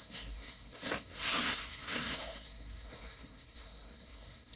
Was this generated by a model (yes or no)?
yes